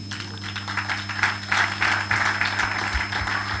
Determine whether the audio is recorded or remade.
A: recorded